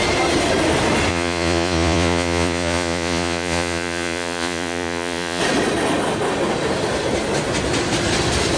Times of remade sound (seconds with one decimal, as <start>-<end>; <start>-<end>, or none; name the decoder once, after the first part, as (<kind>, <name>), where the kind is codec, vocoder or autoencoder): 1.1-5.4 (vocoder, Vocos)